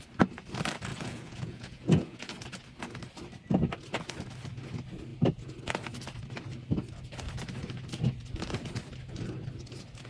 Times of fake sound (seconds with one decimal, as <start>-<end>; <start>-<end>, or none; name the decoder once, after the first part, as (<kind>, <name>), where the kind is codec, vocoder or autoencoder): 0.9-2.3 (vocoder, Vocos)